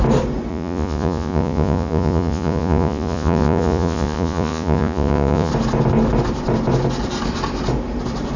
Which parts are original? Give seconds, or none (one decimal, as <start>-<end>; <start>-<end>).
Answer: 0.0-0.5; 5.5-8.4